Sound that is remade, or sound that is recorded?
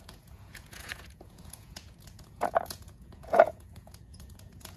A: remade